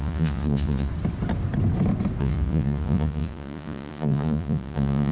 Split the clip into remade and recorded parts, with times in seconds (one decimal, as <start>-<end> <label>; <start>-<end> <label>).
0.0-0.9 remade; 0.9-2.2 recorded; 2.2-5.1 remade